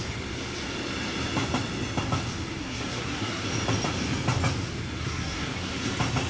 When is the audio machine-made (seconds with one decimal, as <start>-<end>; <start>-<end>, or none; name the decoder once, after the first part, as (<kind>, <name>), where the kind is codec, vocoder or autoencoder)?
2.6-3.4 (codec, SNAC); 5.0-5.7